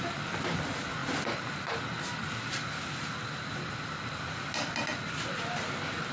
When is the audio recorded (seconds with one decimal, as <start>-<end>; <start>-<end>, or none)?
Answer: 0.0-6.1